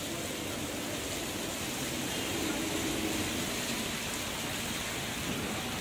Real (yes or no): yes